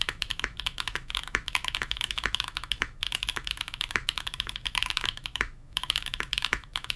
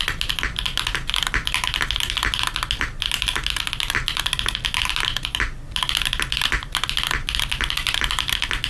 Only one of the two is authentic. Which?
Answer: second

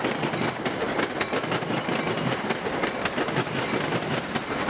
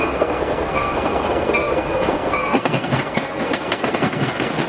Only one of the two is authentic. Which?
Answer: first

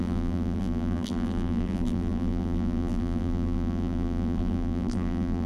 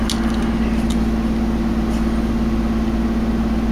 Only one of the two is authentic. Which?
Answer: second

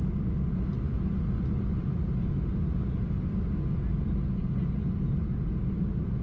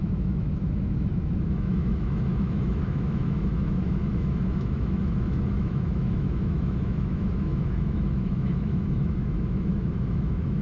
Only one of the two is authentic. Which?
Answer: first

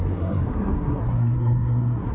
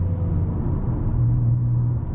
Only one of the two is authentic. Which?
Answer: second